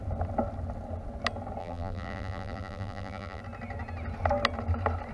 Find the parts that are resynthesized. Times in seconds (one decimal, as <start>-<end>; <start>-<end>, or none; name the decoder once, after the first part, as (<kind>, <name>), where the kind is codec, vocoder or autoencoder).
1.6-3.4 (vocoder, BigVGAN v2)